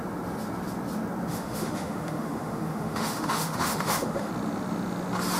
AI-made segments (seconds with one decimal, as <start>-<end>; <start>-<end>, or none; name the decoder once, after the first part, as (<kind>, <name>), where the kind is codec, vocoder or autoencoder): 1.3-4.3 (autoencoder, DAC-VAE)